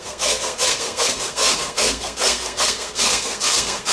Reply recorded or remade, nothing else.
remade